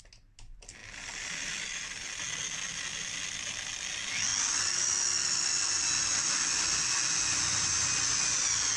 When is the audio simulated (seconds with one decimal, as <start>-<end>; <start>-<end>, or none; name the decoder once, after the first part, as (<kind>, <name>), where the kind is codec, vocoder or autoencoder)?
none